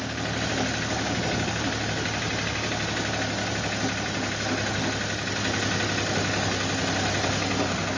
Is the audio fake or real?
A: real